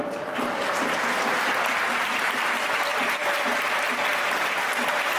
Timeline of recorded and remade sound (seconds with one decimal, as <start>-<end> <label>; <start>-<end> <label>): 0.0-5.2 recorded